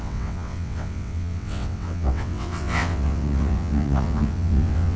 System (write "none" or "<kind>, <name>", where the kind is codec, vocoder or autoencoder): vocoder, WaveNeXt